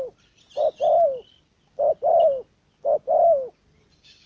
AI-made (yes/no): no